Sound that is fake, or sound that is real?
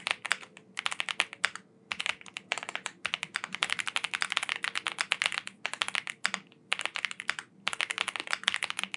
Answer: real